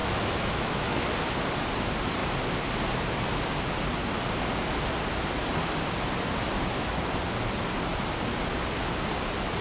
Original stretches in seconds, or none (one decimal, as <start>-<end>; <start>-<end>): 1.1-9.6